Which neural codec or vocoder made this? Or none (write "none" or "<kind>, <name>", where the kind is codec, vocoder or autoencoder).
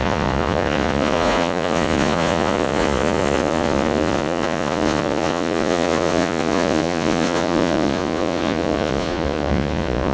vocoder, Vocos